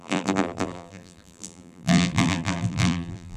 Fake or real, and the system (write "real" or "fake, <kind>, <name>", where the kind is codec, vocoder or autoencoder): fake, vocoder, BigVGAN v2